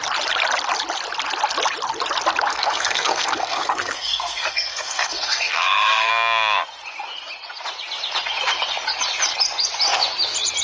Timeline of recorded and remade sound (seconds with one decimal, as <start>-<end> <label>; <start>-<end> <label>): 0.0-2.5 recorded; 2.5-6.1 remade; 6.1-10.6 recorded